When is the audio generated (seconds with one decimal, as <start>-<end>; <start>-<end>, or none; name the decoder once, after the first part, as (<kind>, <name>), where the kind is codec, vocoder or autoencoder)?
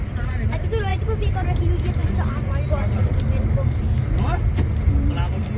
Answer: none